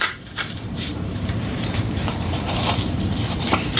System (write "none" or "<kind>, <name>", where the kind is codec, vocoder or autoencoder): vocoder, BigVGAN v2